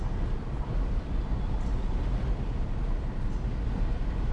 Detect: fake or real real